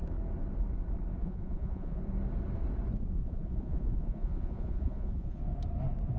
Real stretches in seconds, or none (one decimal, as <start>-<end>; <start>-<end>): 0.0-1.2; 2.0-3.2; 5.4-6.2